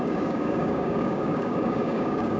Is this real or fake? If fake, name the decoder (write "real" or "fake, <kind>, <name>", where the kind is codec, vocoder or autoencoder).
fake, codec, DAC